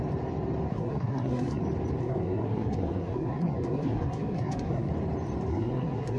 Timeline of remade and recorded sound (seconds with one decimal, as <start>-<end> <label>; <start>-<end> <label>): 0.0-0.7 recorded; 0.7-1.6 remade; 1.6-2.0 recorded; 2.0-4.9 remade; 4.9-5.5 recorded; 5.5-6.2 remade